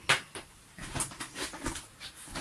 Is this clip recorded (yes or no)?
yes